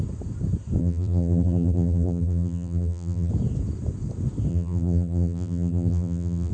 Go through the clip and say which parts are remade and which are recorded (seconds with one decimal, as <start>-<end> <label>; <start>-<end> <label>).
0.0-0.8 recorded; 0.8-3.3 remade; 3.3-4.5 recorded; 4.5-6.5 remade